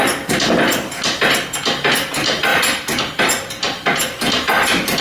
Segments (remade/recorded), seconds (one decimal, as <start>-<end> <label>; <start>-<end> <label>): 0.0-2.5 recorded; 2.5-3.2 remade; 3.2-5.0 recorded